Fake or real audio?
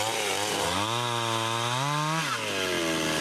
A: real